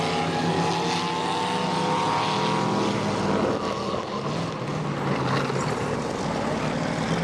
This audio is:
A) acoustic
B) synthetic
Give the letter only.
A